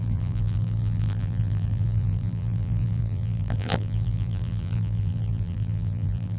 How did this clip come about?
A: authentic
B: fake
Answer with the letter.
B